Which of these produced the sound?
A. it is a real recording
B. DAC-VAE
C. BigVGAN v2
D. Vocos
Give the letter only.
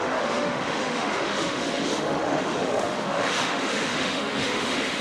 B